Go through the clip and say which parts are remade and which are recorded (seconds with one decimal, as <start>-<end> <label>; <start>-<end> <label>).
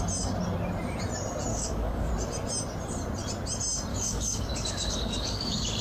0.0-1.5 recorded; 1.5-2.1 remade; 2.1-3.9 recorded; 3.9-5.8 remade